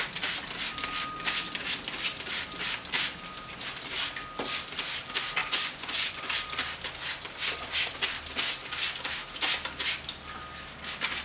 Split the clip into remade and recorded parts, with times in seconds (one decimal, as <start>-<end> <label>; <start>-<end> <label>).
0.0-5.4 recorded; 5.4-6.3 remade; 6.3-11.2 recorded